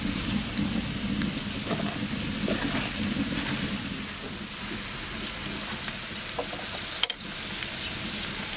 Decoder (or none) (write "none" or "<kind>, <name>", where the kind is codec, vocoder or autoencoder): none